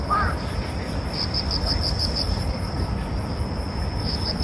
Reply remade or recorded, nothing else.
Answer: remade